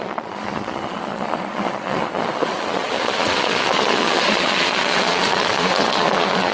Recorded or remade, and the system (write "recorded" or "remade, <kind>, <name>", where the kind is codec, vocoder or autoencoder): remade, vocoder, Vocos